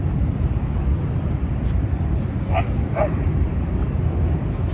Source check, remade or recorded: remade